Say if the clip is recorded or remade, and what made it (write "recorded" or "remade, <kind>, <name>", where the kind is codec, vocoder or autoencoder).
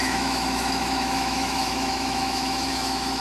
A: remade, autoencoder, DAC-VAE